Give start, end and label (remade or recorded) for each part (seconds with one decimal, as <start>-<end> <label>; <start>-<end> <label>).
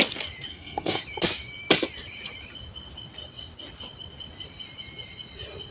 0.0-0.5 recorded; 0.5-1.0 remade; 1.0-5.7 recorded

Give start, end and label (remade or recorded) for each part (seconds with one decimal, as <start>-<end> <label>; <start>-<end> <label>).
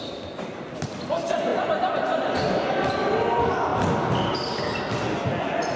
0.0-5.8 recorded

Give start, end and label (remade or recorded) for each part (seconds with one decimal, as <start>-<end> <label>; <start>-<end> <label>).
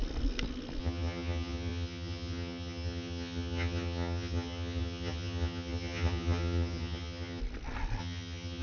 0.0-0.8 recorded; 0.8-7.4 remade; 7.4-8.0 recorded; 8.0-8.6 remade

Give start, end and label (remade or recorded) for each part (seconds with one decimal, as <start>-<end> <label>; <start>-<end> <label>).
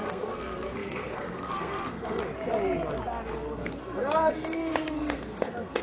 0.0-2.2 remade; 2.2-3.3 recorded; 3.3-5.8 remade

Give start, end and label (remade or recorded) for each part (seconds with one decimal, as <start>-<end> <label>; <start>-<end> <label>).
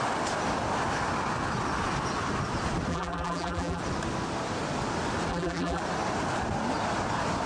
0.0-2.9 recorded; 2.9-3.8 remade; 3.8-5.3 recorded; 5.3-5.8 remade; 5.8-7.5 recorded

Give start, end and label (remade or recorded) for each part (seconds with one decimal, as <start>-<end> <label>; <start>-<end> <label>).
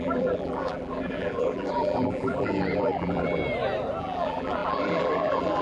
0.0-3.4 remade; 3.4-4.0 recorded; 4.0-5.6 remade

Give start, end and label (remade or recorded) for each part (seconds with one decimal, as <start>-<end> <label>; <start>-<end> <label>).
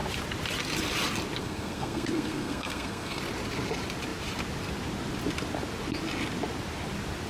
0.0-1.4 recorded; 1.4-3.2 remade; 3.2-7.3 recorded